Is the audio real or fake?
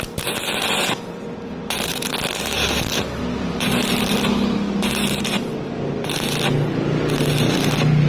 real